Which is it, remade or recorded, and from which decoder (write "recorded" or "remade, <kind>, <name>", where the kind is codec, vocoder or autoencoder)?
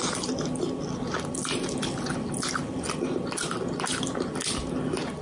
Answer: recorded